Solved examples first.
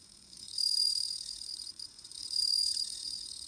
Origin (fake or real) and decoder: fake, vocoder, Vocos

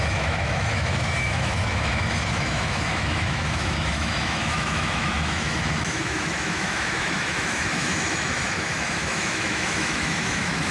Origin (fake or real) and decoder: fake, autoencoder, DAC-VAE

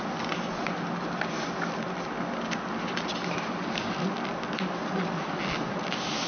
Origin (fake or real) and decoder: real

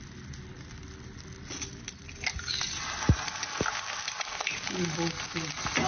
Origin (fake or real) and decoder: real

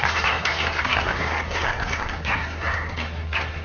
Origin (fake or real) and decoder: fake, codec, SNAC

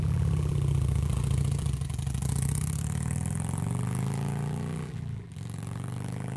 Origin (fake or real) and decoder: fake, vocoder, BigVGAN v2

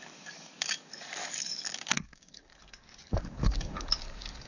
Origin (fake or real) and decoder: fake, codec, DAC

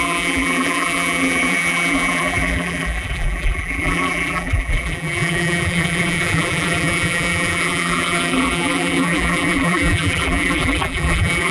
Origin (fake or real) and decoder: fake, vocoder, BigVGAN v2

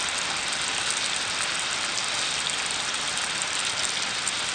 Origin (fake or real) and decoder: real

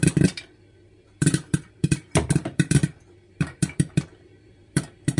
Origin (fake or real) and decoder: fake, vocoder, BigVGAN v2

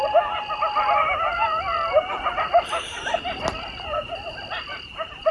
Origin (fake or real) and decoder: fake, vocoder, BigVGAN v2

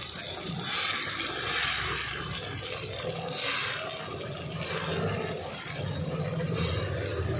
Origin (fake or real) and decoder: real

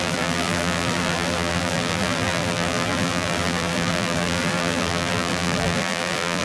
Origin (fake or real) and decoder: fake, vocoder, BigVGAN v2